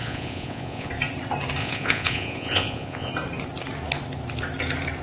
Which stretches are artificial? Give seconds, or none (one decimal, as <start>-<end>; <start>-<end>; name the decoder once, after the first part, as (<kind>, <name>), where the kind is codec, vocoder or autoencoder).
0.0-0.9 (vocoder, Vocos); 1.6-3.1

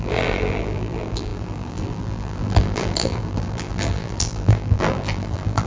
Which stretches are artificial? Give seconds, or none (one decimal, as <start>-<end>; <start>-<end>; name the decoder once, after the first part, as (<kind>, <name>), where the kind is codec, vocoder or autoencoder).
0.0-5.7 (vocoder, BigVGAN v2)

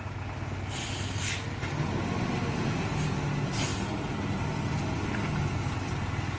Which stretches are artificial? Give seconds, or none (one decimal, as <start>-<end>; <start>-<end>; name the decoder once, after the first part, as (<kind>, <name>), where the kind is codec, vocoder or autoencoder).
none